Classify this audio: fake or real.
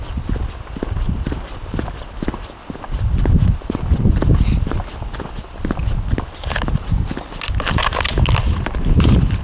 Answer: real